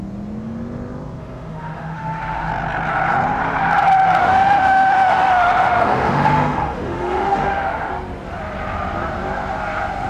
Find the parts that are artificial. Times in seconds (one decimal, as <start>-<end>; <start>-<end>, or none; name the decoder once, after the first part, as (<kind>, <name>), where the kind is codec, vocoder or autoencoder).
1.2-2.5 (autoencoder, DAC-VAE); 4.2-7.9